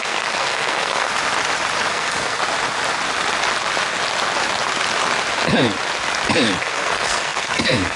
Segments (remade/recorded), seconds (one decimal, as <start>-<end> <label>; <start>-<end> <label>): 0.0-1.1 remade; 1.1-1.9 recorded; 1.9-2.4 remade; 2.4-6.6 recorded; 6.6-8.0 remade